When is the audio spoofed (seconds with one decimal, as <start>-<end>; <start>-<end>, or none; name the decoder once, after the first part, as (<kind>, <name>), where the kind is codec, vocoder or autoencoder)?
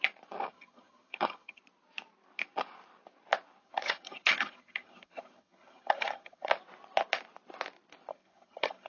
0.5-1.6 (vocoder, HiFi-GAN); 3.6-6.5; 8.1-8.9